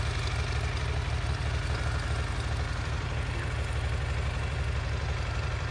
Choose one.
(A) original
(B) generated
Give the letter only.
A